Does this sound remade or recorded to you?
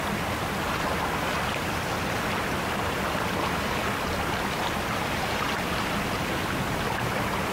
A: recorded